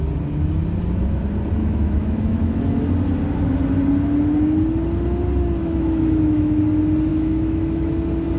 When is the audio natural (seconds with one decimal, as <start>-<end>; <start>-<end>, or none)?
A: 0.0-1.6; 2.6-5.6; 6.6-7.1; 7.9-8.4